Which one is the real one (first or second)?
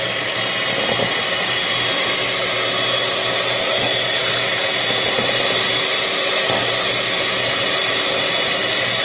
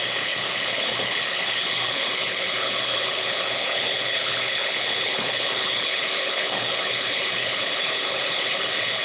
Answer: first